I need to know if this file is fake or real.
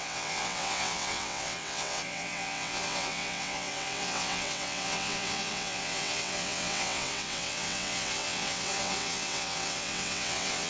fake